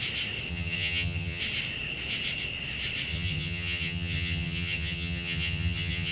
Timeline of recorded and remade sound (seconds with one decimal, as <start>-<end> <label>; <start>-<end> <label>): 0.0-0.5 recorded; 0.5-1.4 remade; 1.4-3.1 recorded; 3.1-6.1 remade